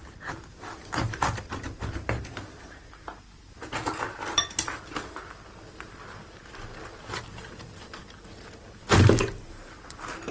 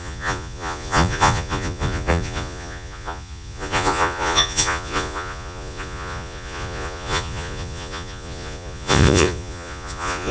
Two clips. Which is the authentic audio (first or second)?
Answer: first